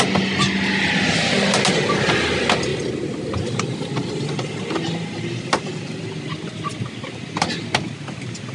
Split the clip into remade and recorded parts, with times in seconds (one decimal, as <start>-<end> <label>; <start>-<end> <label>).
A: 0.0-2.7 recorded; 2.7-3.9 remade; 3.9-8.5 recorded